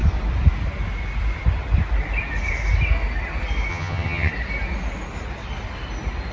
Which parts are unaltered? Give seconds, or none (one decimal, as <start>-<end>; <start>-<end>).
0.0-3.7; 4.3-6.3

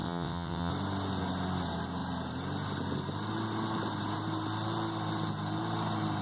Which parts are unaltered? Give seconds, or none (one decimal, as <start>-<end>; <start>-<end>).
0.7-6.2